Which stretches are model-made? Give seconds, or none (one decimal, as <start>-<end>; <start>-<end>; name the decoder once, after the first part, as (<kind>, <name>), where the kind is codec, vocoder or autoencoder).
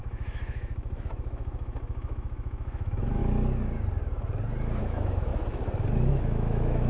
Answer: 0.0-3.2 (autoencoder, DAC-VAE); 4.8-5.3; 6.1-6.9